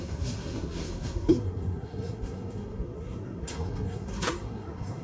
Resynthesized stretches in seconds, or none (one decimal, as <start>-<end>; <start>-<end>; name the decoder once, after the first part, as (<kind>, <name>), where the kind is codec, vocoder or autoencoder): 0.0-5.0 (codec, SNAC)